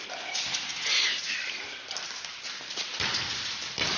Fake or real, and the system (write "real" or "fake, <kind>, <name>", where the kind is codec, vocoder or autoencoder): real